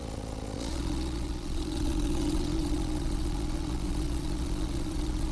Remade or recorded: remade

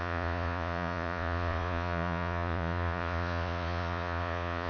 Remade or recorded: remade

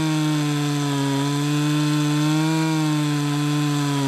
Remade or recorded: recorded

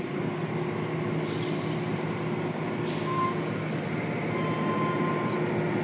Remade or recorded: recorded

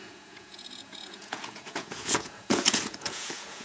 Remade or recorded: remade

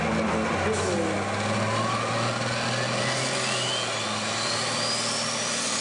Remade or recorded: recorded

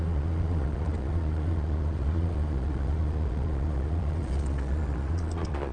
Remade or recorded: remade